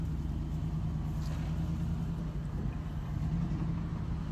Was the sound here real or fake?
real